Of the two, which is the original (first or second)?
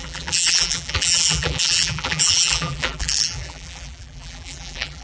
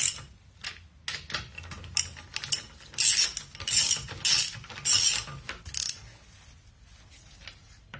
second